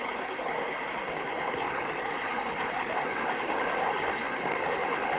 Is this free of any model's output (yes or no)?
yes